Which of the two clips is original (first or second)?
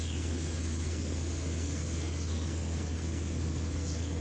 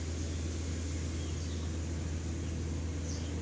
second